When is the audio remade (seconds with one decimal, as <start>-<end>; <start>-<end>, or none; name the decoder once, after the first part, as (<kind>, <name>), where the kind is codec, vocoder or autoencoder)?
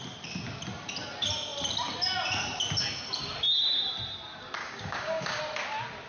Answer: 4.6-5.4 (codec, DAC)